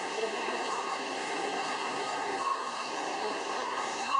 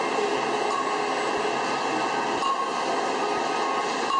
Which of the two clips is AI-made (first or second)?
first